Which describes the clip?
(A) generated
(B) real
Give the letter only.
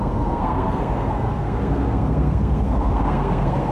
A